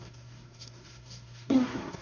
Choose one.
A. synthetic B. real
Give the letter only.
A